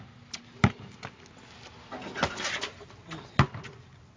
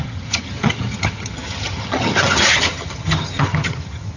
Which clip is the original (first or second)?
first